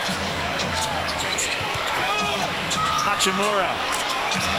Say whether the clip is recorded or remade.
remade